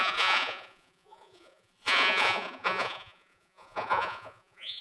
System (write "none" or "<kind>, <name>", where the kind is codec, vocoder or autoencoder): vocoder, Vocos